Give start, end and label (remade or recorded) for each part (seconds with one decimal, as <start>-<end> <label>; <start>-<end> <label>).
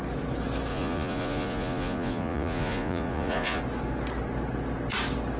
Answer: 0.0-0.7 recorded; 0.7-3.6 remade; 3.6-5.4 recorded